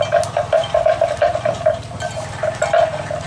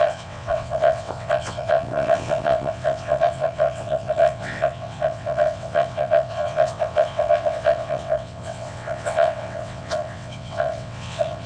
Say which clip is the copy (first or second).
second